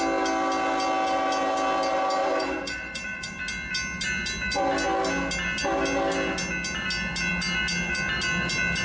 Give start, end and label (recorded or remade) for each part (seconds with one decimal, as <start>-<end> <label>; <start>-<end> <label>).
0.0-2.2 recorded; 2.2-3.4 remade; 3.4-8.8 recorded